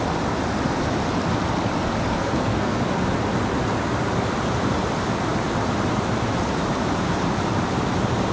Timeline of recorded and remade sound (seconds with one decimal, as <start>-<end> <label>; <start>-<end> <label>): 0.0-2.2 recorded; 2.2-2.8 remade; 2.8-8.3 recorded